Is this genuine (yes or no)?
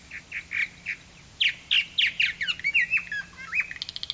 yes